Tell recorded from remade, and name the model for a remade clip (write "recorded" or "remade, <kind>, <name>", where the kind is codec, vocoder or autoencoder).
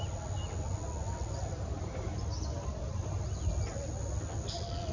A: recorded